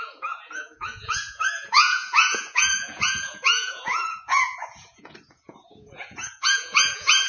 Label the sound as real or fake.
fake